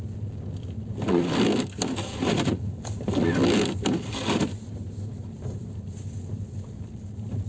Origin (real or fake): real